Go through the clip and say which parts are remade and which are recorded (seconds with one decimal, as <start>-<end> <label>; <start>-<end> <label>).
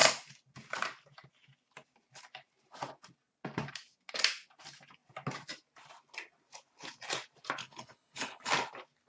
0.0-7.6 recorded; 7.6-8.5 remade; 8.5-9.1 recorded